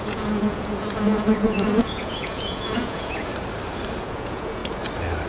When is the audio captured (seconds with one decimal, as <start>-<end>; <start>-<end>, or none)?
3.3-4.0; 4.6-5.3